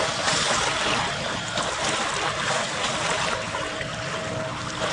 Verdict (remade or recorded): recorded